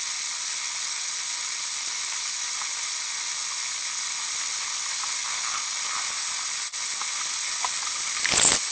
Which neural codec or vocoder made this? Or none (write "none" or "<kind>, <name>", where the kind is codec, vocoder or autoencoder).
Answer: none